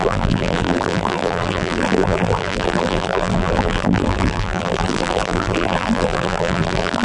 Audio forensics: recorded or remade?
remade